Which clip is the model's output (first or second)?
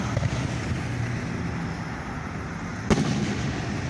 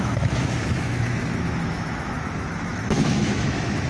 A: second